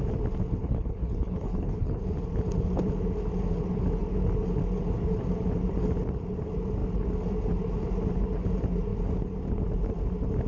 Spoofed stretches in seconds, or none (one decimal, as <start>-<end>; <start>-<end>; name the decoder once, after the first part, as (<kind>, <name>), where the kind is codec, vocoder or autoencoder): 0.6-2.0 (codec, HILCodec)